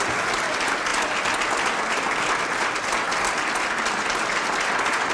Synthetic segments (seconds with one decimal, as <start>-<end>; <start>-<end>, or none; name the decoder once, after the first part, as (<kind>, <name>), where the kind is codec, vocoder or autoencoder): none